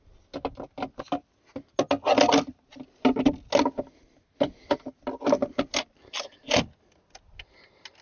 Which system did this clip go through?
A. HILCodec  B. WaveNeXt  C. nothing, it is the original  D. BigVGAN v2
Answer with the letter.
C